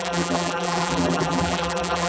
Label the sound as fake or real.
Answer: fake